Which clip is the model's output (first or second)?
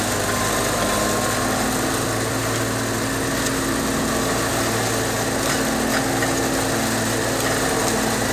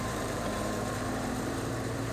second